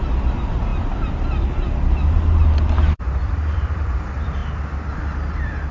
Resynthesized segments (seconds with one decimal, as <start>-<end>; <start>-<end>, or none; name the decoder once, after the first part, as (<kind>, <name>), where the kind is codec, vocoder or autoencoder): 0.0-4.4 (vocoder, BigVGAN v2); 5.0-5.7